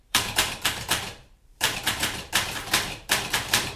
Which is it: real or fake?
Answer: fake